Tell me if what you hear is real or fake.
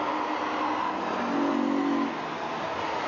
real